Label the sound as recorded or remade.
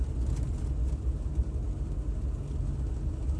recorded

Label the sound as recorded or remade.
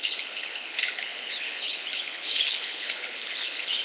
remade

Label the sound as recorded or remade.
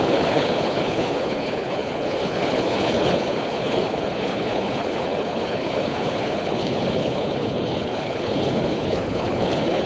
remade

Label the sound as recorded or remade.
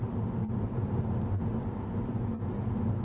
recorded